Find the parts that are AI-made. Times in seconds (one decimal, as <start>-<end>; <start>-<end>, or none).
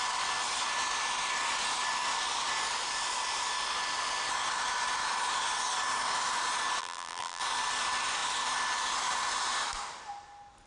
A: 6.8-7.4